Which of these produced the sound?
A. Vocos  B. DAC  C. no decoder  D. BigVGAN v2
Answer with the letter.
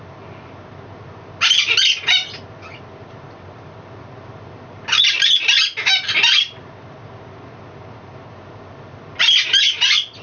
C